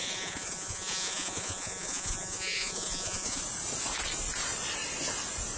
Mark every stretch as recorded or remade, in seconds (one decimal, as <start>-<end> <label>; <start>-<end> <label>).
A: 0.0-3.4 remade; 3.4-5.6 recorded